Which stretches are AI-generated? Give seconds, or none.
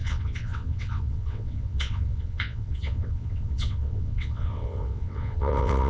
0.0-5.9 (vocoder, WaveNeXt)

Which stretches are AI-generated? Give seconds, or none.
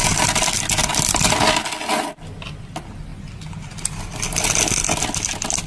none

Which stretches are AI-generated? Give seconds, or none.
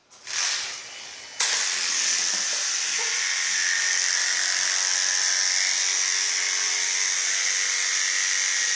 none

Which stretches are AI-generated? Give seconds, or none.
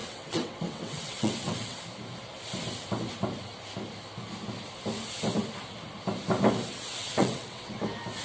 0.0-1.8 (vocoder, WaveNeXt); 6.7-7.7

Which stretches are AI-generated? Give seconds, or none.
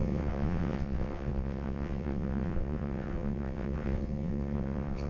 0.0-5.1 (vocoder, WaveNeXt)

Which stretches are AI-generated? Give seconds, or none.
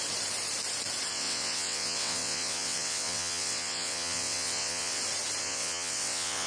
1.1-5.0 (vocoder, WaveNeXt); 5.4-6.5